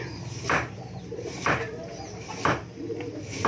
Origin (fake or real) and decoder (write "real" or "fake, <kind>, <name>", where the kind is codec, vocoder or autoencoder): real